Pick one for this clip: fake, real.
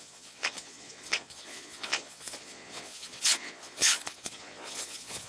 fake